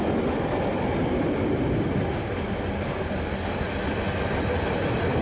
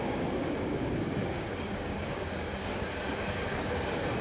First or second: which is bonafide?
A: first